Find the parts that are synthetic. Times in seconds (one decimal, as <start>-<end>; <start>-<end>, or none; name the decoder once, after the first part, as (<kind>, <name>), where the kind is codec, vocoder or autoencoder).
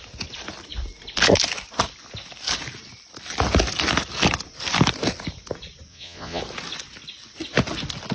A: 5.9-6.4 (vocoder, Vocos)